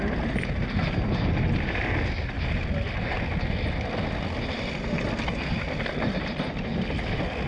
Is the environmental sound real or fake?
real